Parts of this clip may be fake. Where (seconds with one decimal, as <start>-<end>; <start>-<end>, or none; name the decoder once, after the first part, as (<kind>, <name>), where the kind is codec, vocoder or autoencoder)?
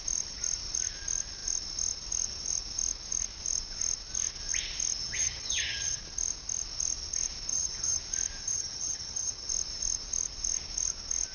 5.0-6.0 (vocoder, HiFi-GAN); 7.5-8.0; 8.4-9.5